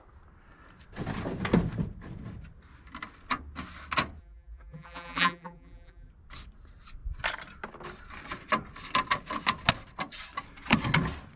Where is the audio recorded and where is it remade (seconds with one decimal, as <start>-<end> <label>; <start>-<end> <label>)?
0.0-4.2 recorded; 4.2-6.1 remade; 6.1-11.4 recorded